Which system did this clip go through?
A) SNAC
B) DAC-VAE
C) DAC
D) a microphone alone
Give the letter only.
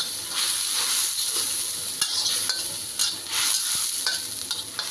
D